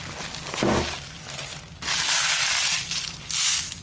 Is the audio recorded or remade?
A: recorded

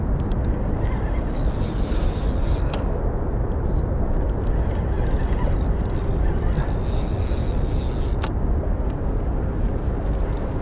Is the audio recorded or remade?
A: recorded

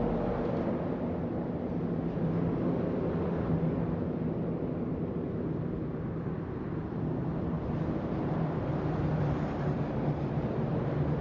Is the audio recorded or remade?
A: recorded